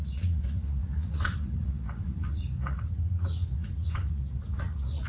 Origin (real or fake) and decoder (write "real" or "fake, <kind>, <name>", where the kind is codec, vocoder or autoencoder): fake, vocoder, Vocos